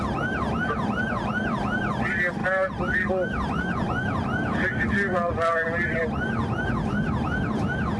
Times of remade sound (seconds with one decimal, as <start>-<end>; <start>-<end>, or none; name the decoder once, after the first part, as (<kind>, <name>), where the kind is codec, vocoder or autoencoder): none